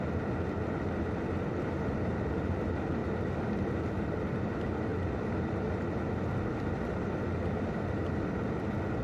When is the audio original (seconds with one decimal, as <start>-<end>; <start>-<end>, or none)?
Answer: 0.0-9.0